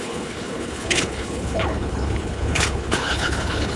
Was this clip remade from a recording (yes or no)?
yes